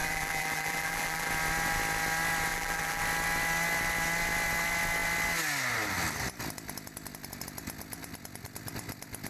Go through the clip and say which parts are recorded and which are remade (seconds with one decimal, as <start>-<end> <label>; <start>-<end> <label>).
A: 0.0-1.3 remade; 1.3-2.5 recorded; 2.5-3.0 remade; 3.0-9.3 recorded